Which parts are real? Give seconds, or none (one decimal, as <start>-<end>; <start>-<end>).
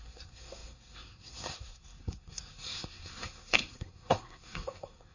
none